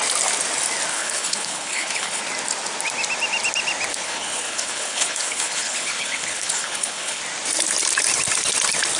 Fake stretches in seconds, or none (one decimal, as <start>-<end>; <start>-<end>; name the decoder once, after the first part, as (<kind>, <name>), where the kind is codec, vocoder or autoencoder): 0.9-2.2 (codec, HILCodec); 3.9-7.2